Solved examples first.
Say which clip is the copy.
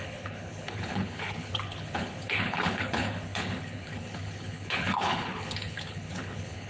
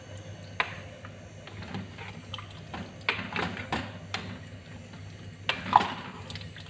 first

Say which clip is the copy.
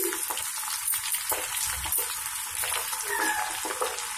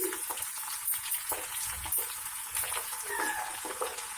second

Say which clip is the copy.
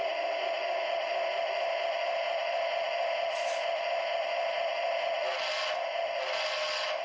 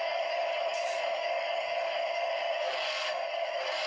second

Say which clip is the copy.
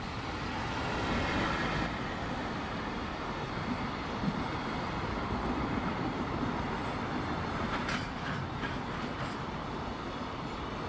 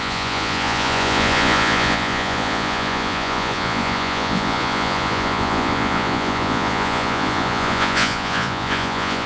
second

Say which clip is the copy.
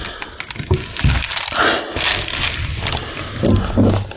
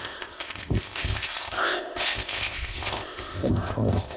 second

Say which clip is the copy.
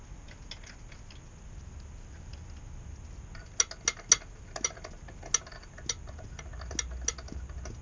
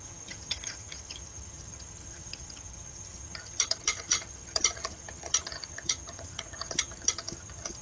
second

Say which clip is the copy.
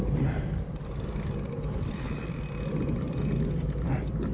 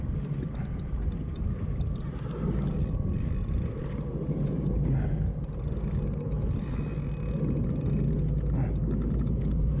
first